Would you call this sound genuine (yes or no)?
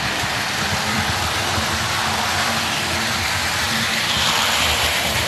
no